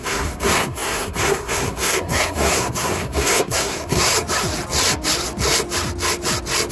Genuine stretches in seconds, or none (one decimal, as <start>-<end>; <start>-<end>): 4.1-6.7